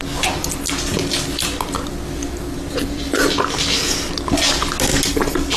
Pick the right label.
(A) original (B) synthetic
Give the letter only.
A